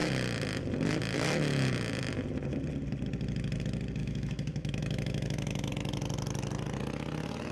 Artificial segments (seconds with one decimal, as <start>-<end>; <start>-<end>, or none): 4.0-5.7